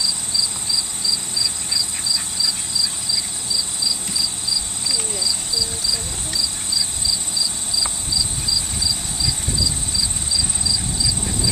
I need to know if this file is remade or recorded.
recorded